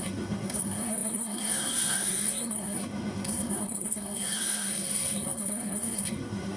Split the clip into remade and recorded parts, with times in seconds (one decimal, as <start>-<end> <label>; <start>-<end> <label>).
0.0-6.6 remade